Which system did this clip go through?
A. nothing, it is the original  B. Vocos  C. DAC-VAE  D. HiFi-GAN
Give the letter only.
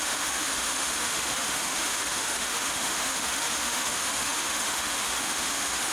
C